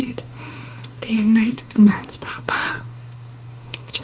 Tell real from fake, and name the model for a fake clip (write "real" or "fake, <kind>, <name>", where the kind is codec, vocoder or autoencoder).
fake, codec, SNAC